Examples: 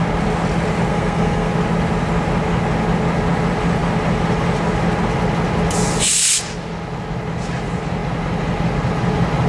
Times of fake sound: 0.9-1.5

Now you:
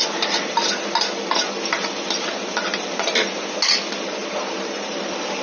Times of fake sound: 4.2-5.4